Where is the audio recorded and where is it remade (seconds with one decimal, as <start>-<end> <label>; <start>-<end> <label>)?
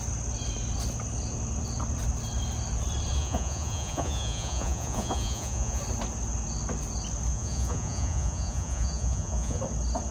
0.0-3.2 recorded; 3.2-5.8 remade; 5.8-7.3 recorded; 7.3-9.6 remade; 9.6-10.1 recorded